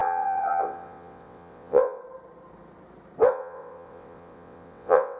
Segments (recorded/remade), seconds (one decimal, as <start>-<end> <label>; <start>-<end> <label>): 0.0-2.0 remade; 2.0-3.3 recorded; 3.3-5.2 remade